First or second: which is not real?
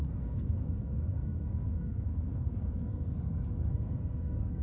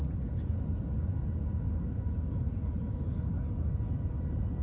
first